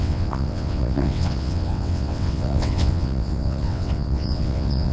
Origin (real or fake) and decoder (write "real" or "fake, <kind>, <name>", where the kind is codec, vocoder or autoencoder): fake, vocoder, WaveNeXt